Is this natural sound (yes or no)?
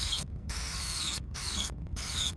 no